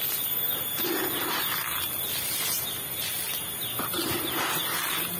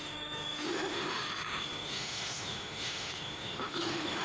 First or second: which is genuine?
first